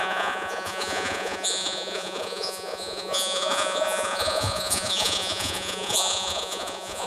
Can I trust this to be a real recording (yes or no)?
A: no